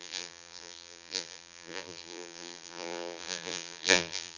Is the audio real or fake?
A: fake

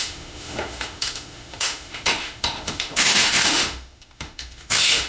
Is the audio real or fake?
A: fake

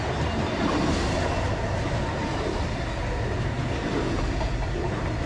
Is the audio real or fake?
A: real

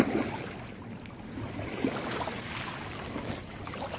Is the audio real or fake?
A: real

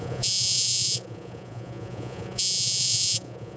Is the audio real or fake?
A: fake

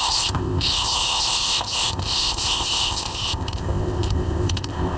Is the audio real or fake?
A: fake